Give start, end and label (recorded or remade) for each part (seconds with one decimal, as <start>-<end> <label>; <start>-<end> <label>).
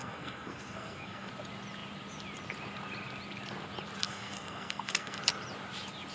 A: 0.0-1.3 remade; 1.3-4.0 recorded; 4.0-5.2 remade; 5.2-6.1 recorded